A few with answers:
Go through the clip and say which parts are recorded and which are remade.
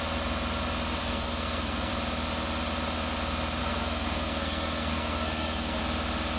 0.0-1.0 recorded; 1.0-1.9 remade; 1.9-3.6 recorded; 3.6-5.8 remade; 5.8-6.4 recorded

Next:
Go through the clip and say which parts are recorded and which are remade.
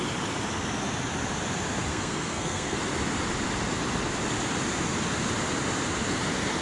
0.0-1.9 recorded; 1.9-2.8 remade; 2.8-6.6 recorded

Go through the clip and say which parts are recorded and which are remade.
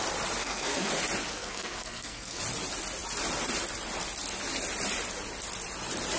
0.0-0.4 recorded; 0.4-0.9 remade; 0.9-1.3 recorded; 1.3-2.4 remade; 2.4-6.2 recorded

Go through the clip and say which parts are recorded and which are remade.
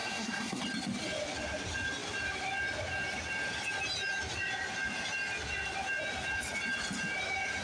0.0-0.6 remade; 0.6-7.6 recorded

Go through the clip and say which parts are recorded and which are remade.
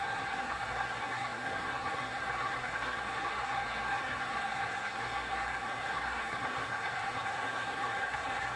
0.0-8.6 remade